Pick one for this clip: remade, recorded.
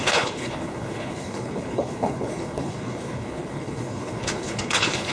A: remade